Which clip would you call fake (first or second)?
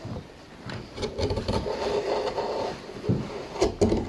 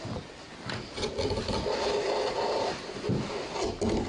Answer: first